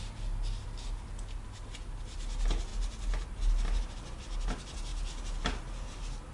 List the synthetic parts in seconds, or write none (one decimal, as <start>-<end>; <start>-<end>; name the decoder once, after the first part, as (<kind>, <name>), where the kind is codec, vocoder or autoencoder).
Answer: none